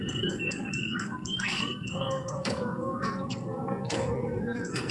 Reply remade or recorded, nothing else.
remade